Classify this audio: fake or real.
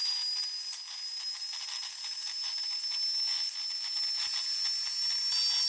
real